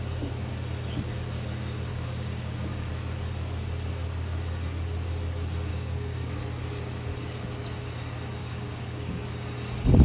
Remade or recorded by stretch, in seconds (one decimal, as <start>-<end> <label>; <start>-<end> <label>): 0.0-1.9 recorded; 1.9-2.9 remade; 2.9-5.7 recorded; 5.7-6.3 remade; 6.3-8.4 recorded; 8.4-9.2 remade; 9.2-10.0 recorded